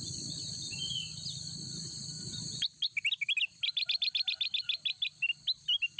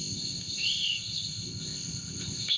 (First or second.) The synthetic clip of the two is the second